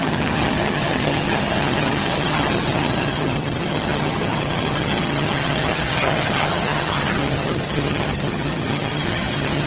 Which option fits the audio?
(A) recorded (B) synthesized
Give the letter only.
B